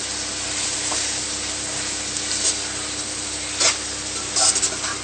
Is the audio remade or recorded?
recorded